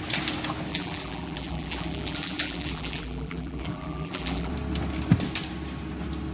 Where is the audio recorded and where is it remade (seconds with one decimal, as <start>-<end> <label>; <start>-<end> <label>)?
0.0-0.7 recorded; 0.7-4.5 remade; 4.5-6.3 recorded